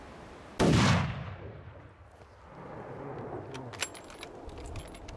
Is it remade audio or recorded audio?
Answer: recorded